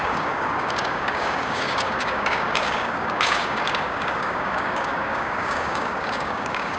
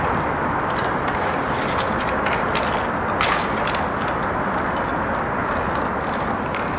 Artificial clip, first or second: first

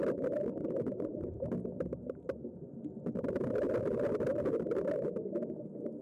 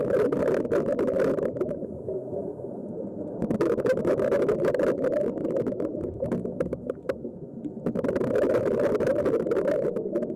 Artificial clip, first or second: second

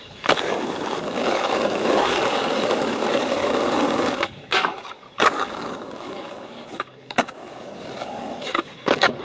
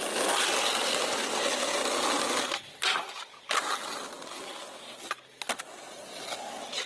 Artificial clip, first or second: first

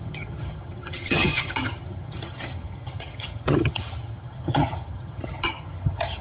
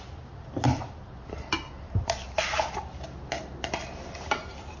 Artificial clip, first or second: first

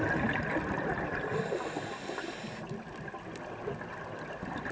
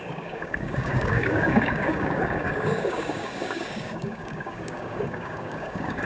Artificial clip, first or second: second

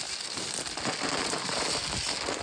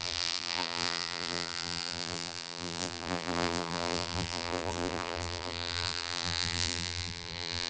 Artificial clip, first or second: second